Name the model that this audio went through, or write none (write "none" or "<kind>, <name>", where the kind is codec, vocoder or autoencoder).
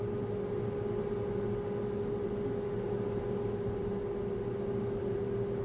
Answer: none